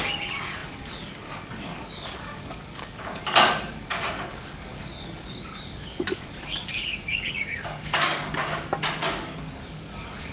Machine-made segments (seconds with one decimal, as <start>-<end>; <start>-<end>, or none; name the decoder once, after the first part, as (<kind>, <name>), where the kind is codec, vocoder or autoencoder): 0.0-8.4 (codec, DAC); 9.0-10.3